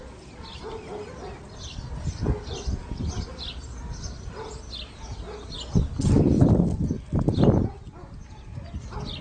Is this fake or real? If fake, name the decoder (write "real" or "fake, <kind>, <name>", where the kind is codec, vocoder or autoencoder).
real